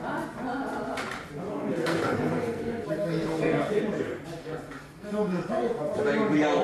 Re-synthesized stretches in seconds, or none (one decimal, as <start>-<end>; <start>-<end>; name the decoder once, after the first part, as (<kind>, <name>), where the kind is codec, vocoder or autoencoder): 1.5-3.8 (codec, SNAC); 4.4-5.8